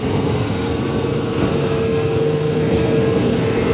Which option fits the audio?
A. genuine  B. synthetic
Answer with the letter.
B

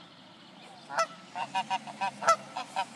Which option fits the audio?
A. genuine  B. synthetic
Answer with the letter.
A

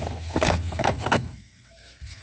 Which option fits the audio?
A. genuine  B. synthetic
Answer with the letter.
B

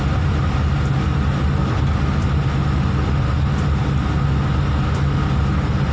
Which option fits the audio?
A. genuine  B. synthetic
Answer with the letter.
A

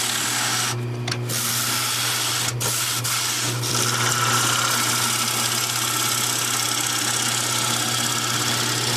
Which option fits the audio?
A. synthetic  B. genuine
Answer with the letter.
B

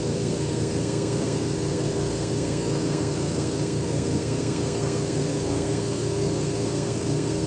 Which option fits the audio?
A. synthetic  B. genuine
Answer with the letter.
A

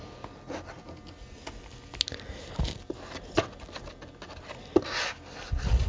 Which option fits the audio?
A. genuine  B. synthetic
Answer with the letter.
A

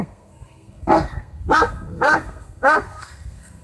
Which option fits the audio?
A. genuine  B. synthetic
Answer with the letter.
B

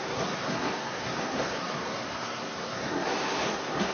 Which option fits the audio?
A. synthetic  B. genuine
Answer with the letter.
A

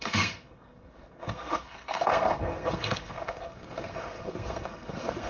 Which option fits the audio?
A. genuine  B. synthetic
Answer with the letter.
B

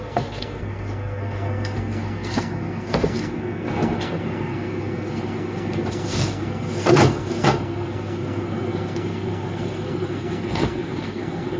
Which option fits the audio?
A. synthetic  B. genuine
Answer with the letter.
A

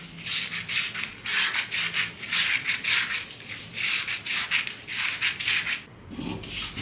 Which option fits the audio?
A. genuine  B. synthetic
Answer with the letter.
A